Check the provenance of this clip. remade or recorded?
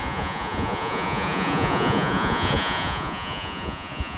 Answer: remade